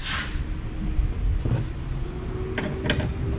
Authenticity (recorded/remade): recorded